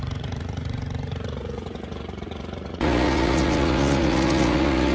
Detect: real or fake fake